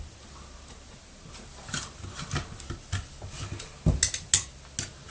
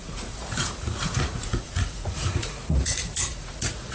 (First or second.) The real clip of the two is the first